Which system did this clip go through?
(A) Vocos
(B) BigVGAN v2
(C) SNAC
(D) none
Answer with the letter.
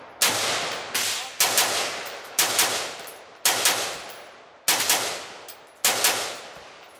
D